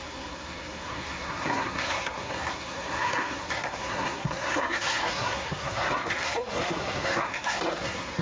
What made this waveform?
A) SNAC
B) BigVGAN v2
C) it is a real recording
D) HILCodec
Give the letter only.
A